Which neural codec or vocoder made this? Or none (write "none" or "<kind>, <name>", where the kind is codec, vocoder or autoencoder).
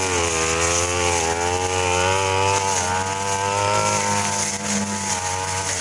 none